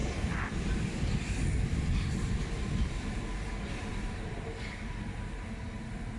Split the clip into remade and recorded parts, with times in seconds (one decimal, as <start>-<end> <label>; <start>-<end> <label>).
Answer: 0.0-6.2 recorded